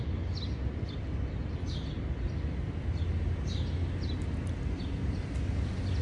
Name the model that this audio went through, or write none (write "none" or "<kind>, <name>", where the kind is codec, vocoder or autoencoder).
none